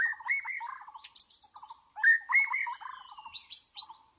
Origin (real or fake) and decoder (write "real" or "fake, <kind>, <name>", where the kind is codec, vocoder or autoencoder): real